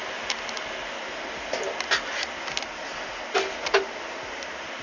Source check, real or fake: real